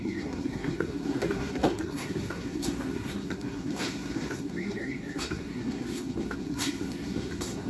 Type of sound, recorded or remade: remade